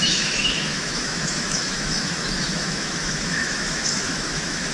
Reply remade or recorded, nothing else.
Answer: remade